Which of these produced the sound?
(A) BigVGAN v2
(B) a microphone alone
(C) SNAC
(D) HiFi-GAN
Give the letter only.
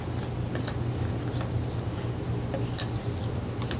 B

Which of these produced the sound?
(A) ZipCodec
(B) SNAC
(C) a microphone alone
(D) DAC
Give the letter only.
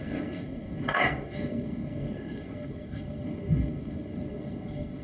B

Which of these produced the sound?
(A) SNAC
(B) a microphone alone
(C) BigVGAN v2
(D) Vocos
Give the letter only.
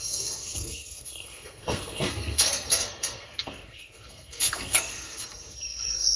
A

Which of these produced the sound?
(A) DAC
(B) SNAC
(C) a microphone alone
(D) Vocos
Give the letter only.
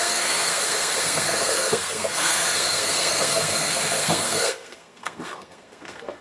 B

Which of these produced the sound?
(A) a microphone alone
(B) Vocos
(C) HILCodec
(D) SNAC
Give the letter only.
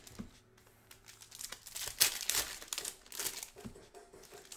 A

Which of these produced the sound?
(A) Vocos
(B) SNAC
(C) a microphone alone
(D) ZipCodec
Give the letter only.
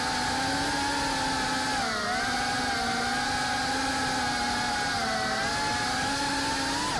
C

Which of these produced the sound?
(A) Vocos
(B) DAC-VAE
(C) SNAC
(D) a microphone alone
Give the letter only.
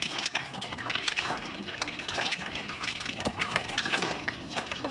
C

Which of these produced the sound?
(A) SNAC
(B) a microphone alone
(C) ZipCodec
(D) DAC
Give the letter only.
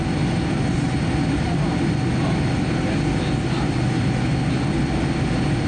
B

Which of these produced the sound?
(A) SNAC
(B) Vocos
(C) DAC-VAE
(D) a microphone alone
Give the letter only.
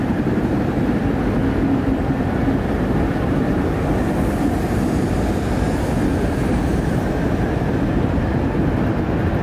D